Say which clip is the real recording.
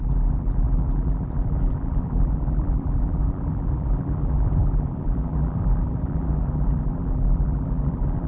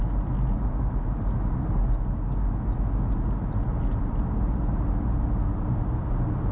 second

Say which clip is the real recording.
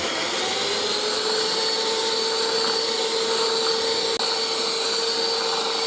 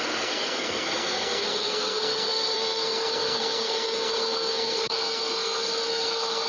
first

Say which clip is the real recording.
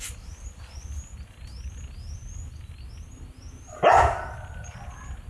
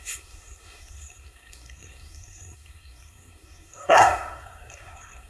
first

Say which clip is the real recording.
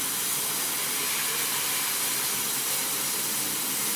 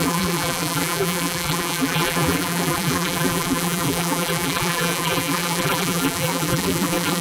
first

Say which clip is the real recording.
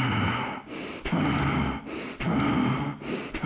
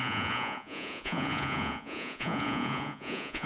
first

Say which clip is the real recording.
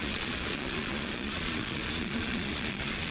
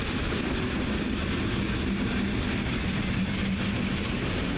second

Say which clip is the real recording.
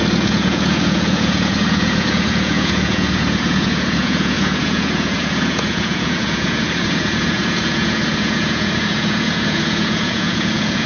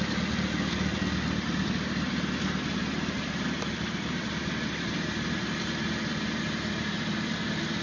second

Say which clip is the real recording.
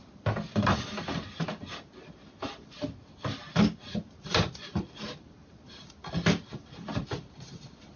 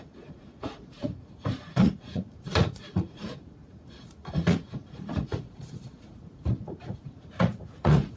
first